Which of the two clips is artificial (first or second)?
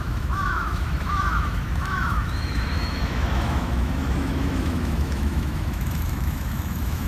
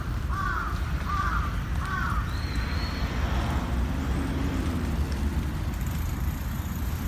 first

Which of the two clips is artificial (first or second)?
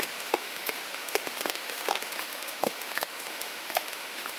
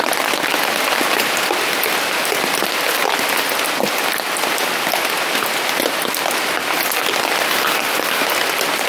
first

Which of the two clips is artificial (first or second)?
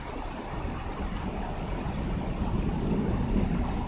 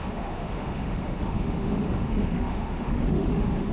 second